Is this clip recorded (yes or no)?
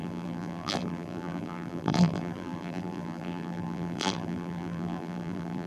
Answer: no